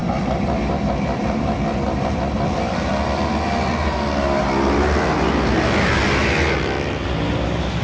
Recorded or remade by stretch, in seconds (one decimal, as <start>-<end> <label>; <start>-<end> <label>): 0.0-7.8 recorded